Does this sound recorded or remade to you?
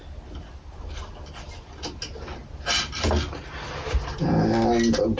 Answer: recorded